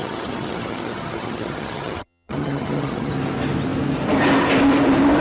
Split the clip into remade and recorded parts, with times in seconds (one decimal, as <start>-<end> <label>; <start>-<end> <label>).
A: 0.0-3.1 remade; 3.1-5.2 recorded